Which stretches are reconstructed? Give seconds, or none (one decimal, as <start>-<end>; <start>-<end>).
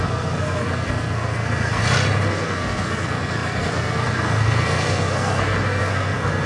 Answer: 0.0-1.8; 2.3-6.5